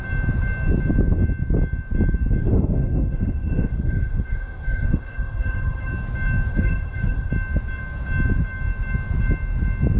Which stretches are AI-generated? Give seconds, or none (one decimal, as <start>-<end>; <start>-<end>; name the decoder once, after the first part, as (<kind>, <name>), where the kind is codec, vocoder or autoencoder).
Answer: 2.4-5.9 (autoencoder, DAC-VAE); 6.5-7.3